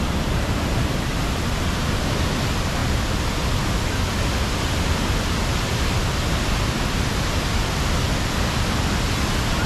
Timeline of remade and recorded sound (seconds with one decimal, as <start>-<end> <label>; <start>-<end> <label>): 0.0-9.7 recorded